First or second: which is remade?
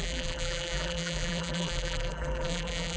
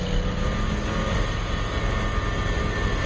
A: first